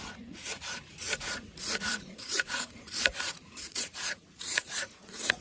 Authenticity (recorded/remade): remade